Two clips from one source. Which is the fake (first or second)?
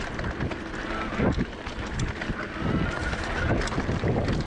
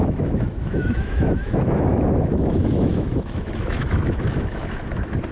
second